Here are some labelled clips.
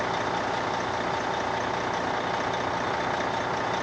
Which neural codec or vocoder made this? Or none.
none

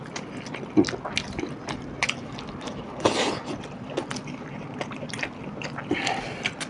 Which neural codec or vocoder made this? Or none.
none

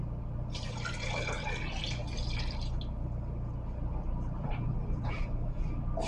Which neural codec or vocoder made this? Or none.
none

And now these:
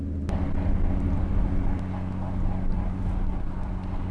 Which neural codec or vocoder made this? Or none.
none